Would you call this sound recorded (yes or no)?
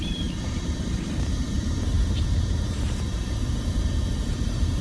no